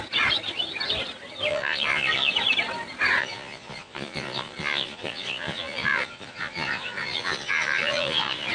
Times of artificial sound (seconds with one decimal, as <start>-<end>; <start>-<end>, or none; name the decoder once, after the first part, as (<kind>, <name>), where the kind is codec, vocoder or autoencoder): 1.5-2.3 (vocoder, Vocos); 3.2-8.5